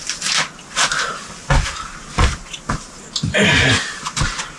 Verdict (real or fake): real